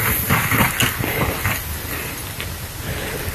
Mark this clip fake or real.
real